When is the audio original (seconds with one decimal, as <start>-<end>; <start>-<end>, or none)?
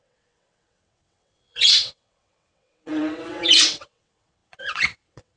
none